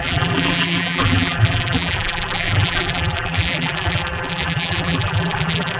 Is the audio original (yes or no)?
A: no